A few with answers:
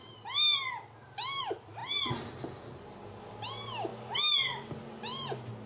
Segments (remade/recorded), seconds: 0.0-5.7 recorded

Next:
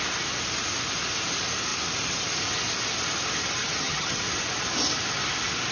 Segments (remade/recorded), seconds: 0.0-3.6 recorded; 3.6-4.2 remade; 4.2-5.7 recorded